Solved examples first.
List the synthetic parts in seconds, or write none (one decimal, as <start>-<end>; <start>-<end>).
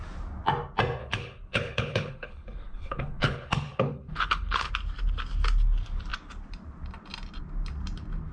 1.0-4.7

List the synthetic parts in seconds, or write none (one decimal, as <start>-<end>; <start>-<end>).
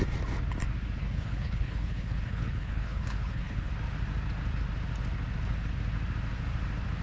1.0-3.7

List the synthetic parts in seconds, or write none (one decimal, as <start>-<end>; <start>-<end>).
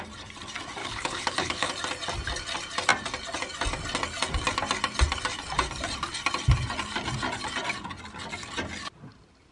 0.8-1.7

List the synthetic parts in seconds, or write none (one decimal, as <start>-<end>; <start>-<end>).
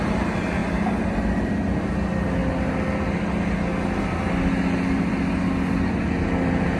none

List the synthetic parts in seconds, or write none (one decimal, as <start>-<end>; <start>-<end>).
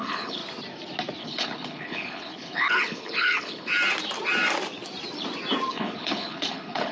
0.0-0.4; 1.2-3.7; 5.7-6.9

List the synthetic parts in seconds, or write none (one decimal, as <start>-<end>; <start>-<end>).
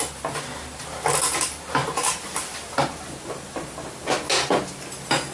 none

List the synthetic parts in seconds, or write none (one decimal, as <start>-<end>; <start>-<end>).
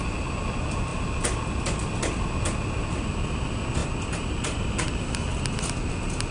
none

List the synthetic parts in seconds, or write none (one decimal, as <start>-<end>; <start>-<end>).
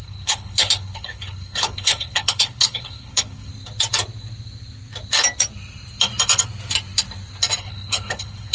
0.0-3.5; 7.6-8.5